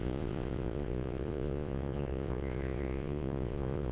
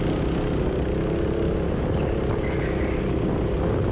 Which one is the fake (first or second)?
first